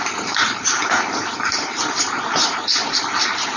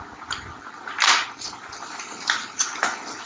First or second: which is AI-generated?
first